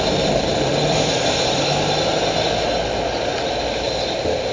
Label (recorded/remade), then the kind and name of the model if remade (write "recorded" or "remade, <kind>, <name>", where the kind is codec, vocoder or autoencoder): recorded